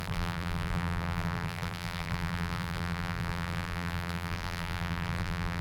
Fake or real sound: fake